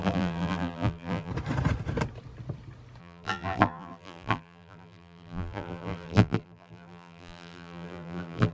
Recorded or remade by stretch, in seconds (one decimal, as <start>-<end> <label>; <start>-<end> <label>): 0.0-1.3 remade; 1.3-3.0 recorded; 3.0-8.5 remade